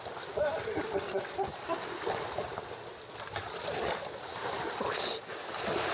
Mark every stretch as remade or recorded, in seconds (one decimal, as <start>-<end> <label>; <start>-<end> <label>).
0.0-5.9 recorded